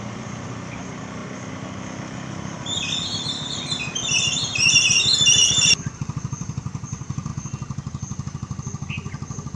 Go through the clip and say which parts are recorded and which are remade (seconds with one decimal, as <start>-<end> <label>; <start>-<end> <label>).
0.0-1.2 remade; 1.2-3.2 recorded; 3.2-7.3 remade; 7.3-9.6 recorded